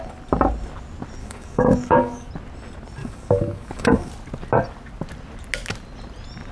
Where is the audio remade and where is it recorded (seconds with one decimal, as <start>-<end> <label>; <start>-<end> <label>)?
0.0-1.2 recorded; 1.2-2.3 remade; 2.3-3.0 recorded; 3.0-4.1 remade; 4.1-6.5 recorded